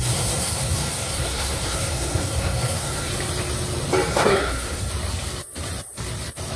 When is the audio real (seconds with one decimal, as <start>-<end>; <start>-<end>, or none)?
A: 3.1-4.1; 4.8-6.6